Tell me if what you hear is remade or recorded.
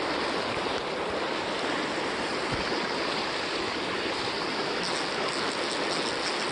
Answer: recorded